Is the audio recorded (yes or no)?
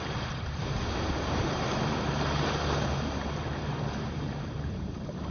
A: no